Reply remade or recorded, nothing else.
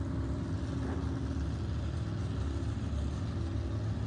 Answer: recorded